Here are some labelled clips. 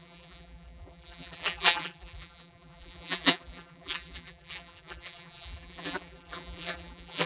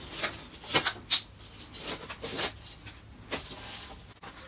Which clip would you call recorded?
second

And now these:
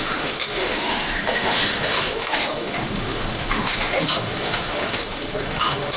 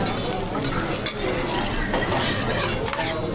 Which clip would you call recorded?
second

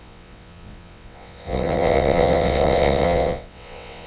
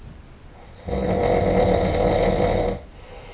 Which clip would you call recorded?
second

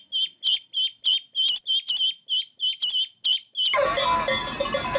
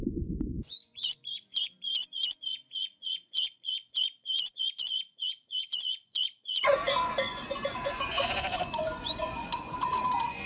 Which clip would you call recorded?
first